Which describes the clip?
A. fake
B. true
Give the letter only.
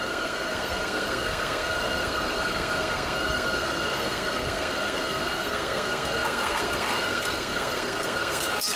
A